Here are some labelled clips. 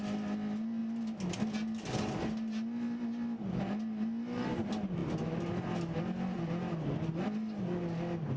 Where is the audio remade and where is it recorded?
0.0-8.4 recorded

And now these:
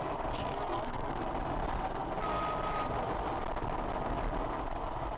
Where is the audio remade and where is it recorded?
0.0-0.4 recorded; 0.4-1.3 remade; 1.3-5.2 recorded

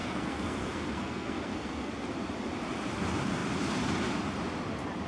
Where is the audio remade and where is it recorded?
0.0-1.9 remade; 1.9-5.1 recorded

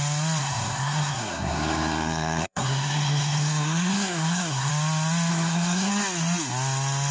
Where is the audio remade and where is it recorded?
0.0-0.4 recorded; 0.4-4.7 remade; 4.7-5.3 recorded; 5.3-5.9 remade; 5.9-7.1 recorded